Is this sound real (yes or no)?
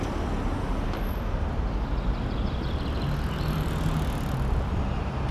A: yes